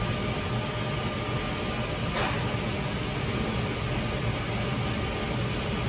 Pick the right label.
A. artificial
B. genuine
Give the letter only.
B